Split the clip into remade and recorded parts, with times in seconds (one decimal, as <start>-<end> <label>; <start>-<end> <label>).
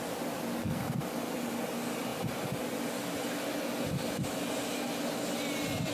0.0-0.6 recorded; 0.6-1.3 remade; 1.3-5.9 recorded